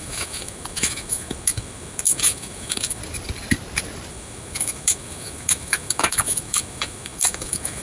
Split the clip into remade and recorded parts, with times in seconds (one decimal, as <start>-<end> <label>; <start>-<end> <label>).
0.0-3.0 remade; 3.0-4.1 recorded; 4.1-7.8 remade